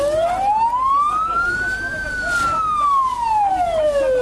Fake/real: real